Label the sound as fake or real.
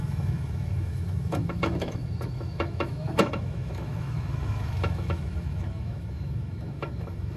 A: fake